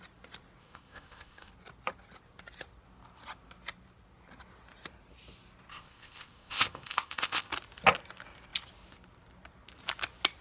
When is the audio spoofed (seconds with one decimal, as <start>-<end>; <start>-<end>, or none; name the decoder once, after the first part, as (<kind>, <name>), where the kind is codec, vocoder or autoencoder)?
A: 0.6-1.5 (codec, ZipCodec); 5.7-7.5